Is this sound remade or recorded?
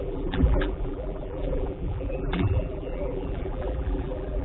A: remade